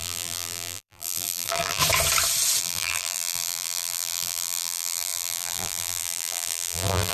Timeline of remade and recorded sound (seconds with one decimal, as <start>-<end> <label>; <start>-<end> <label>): 0.0-1.8 remade; 1.8-2.6 recorded; 2.6-7.1 remade